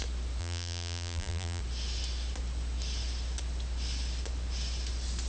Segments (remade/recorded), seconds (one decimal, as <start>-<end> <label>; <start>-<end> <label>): 0.0-0.4 recorded; 0.4-1.6 remade; 1.6-5.3 recorded